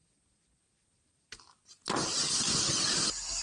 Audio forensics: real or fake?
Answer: real